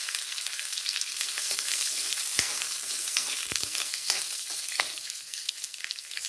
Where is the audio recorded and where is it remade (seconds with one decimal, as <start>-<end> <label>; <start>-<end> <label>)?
0.0-6.3 remade